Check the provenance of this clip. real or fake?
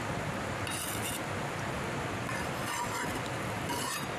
real